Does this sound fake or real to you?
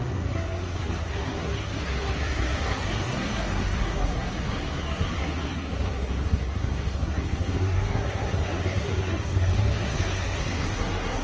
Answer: fake